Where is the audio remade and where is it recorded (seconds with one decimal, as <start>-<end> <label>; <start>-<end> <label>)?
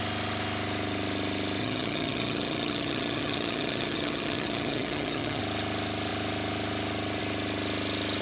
0.0-1.6 recorded; 1.6-5.4 remade; 5.4-8.2 recorded